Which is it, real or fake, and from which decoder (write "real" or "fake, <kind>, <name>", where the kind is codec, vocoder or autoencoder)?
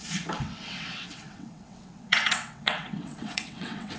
fake, vocoder, WaveNeXt